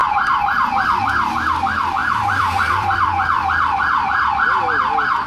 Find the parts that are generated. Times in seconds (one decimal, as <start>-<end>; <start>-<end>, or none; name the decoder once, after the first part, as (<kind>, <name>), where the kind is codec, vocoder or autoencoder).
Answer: 2.0-4.3 (vocoder, BigVGAN v2)